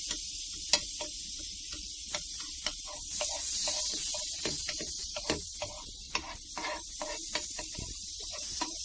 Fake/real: fake